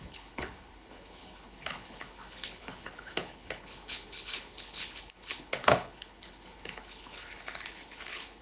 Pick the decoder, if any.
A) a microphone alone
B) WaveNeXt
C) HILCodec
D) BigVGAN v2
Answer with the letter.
C